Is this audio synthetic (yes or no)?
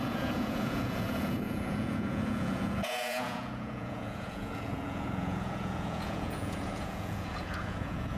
yes